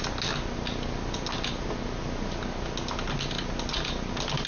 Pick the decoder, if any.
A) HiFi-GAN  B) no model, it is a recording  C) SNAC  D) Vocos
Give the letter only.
B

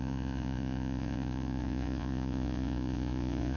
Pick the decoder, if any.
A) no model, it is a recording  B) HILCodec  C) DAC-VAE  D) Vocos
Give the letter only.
D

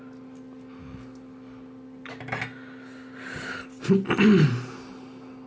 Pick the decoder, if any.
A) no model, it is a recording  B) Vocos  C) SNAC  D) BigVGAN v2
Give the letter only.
A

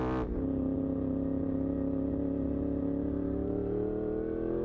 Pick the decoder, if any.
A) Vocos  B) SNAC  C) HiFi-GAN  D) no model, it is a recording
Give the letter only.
D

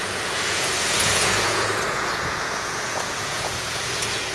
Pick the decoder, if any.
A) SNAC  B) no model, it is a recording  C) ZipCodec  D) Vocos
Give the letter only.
D